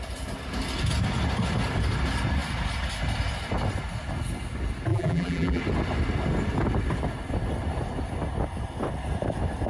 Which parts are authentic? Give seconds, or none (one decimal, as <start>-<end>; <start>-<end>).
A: 0.0-4.9; 5.6-9.7